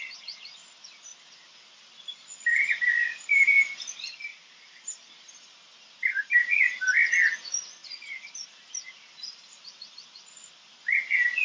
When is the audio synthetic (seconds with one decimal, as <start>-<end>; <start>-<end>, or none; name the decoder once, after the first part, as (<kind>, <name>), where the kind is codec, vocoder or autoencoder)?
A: 4.3-5.1 (vocoder, BigVGAN v2); 7.8-9.3

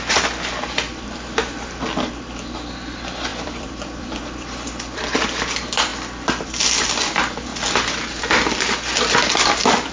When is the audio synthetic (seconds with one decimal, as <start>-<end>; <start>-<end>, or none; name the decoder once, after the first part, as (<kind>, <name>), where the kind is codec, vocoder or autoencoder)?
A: 3.3-4.2 (vocoder, BigVGAN v2)

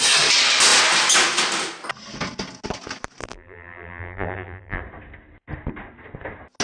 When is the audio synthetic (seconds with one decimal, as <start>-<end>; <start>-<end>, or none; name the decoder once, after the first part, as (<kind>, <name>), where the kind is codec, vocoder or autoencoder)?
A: 3.2-4.8 (vocoder, BigVGAN v2)

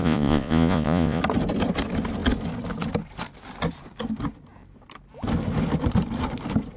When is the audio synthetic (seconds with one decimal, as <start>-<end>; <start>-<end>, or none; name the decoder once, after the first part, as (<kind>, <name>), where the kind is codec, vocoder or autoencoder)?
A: 0.0-1.2 (vocoder, Vocos)

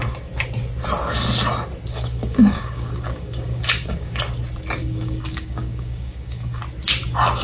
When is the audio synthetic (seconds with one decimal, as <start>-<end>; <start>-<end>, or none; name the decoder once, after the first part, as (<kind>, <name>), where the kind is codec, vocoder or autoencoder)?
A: 1.9-4.2 (codec, DAC); 4.8-6.6

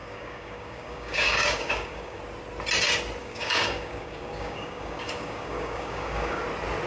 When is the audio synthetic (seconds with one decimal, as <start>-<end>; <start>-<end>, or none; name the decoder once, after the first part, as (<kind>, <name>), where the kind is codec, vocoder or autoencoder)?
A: 0.0-2.2 (codec, DAC); 3.2-6.4

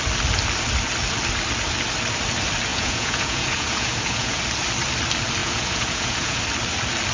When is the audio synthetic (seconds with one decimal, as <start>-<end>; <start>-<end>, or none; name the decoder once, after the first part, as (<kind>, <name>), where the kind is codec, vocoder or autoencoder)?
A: 2.7-4.4 (vocoder, Vocos); 5.4-6.4